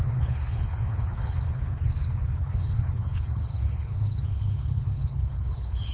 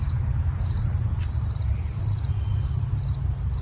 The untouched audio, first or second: second